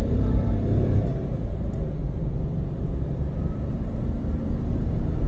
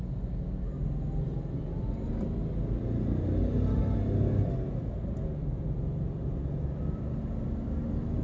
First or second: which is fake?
first